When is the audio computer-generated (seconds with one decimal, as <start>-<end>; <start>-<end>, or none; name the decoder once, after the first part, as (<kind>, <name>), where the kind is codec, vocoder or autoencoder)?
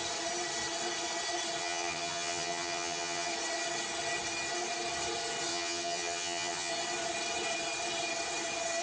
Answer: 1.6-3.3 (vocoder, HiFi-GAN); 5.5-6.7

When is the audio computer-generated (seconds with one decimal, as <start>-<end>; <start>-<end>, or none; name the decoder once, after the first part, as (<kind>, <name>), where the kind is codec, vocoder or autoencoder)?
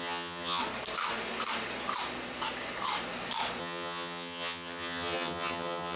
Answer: 0.0-0.6 (vocoder, HiFi-GAN); 3.6-6.0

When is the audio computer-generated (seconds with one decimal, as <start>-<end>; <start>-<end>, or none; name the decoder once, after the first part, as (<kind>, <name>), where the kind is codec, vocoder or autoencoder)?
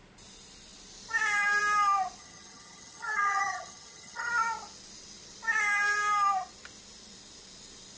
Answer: 2.2-4.3 (vocoder, HiFi-GAN)